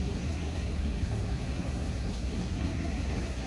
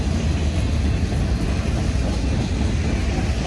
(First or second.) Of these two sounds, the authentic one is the second